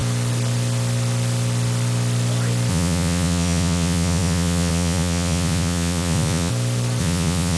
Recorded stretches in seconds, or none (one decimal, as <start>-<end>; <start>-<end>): 0.0-2.7; 6.5-7.0